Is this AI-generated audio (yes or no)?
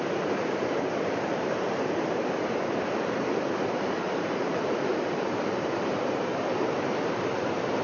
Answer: yes